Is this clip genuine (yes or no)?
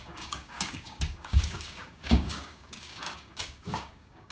no